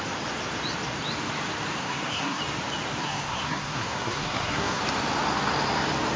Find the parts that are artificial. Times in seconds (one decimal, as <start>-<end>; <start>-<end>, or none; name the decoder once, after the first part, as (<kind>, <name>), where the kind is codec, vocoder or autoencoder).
1.8-2.4 (codec, SNAC); 3.0-4.8